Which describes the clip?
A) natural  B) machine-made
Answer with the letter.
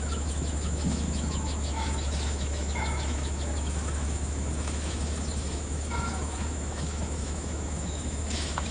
B